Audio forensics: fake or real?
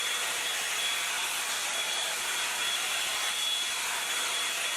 real